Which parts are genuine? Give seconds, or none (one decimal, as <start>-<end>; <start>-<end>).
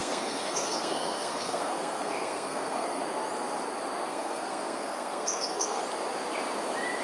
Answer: 3.0-4.1; 5.8-7.0